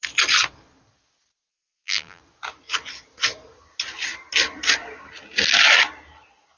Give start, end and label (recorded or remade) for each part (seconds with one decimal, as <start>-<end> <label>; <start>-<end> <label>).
0.0-1.5 recorded; 1.5-2.2 remade; 2.2-6.6 recorded